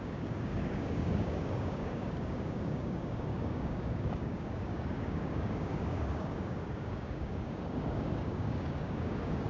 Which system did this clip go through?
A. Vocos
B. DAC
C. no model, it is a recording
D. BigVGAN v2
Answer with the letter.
B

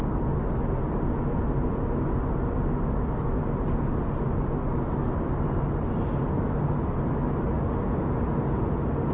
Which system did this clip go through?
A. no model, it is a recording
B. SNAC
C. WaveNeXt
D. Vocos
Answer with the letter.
A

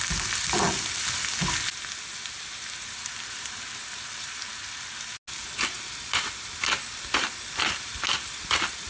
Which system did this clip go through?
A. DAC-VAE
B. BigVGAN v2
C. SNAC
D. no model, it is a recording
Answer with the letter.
D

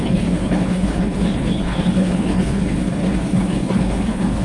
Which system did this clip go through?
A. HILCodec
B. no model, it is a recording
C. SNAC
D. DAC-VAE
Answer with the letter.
A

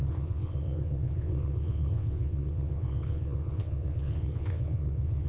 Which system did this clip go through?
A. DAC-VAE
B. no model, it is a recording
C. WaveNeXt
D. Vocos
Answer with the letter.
C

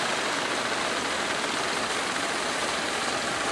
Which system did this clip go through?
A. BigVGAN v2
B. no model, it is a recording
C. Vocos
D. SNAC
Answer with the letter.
B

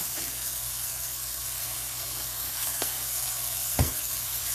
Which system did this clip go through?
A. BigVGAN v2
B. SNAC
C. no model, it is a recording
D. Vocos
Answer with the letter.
B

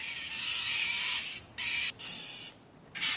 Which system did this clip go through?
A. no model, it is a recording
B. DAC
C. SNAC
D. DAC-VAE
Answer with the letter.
A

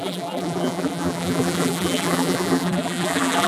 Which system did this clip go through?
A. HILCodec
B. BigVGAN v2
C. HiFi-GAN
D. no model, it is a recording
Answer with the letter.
B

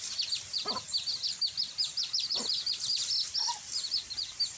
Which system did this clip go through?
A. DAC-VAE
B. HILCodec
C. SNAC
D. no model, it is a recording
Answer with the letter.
D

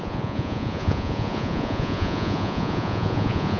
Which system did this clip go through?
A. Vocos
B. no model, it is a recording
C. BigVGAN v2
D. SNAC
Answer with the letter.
A